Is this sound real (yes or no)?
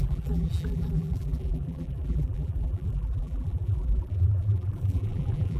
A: no